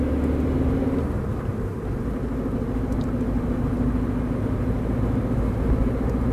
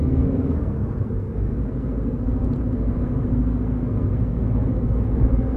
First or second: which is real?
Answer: first